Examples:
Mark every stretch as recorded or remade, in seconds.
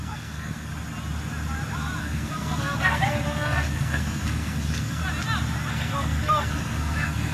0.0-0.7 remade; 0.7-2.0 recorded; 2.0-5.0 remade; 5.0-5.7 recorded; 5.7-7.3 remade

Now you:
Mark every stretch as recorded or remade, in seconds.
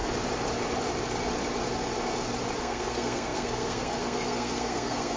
0.0-2.6 recorded; 2.6-5.2 remade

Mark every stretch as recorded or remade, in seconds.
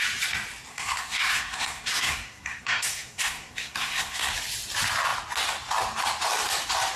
0.0-0.7 recorded; 0.7-4.3 remade; 4.3-7.0 recorded